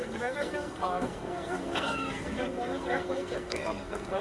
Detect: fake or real fake